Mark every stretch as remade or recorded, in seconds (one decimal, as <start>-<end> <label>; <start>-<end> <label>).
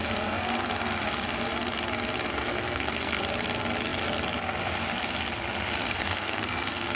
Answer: 0.0-2.5 recorded; 2.5-3.2 remade; 3.2-5.8 recorded; 5.8-7.0 remade